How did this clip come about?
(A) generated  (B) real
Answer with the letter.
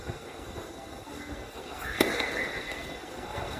A